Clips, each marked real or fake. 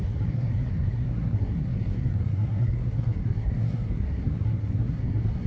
fake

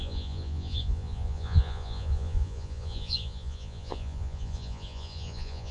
fake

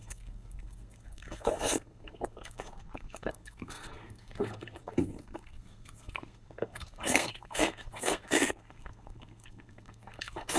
fake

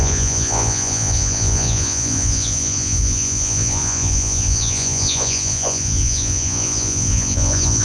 fake